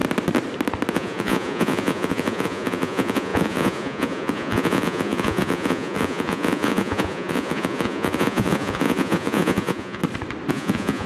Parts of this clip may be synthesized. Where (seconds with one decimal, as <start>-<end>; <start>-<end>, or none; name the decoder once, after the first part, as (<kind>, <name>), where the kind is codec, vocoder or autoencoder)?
0.9-10.0 (vocoder, Vocos); 10.5-11.1